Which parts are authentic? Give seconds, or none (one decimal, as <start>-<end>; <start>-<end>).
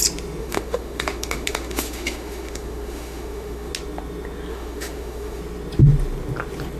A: 0.0-0.4; 3.7-4.5; 5.4-6.8